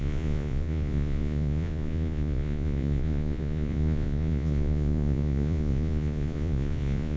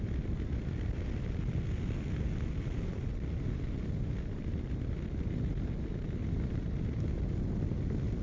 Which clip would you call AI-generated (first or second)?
first